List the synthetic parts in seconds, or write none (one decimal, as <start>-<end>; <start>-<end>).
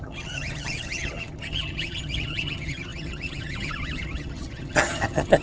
0.0-5.4